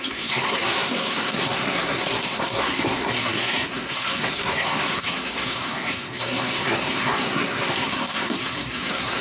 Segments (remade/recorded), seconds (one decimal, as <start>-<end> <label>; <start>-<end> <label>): 0.0-9.2 remade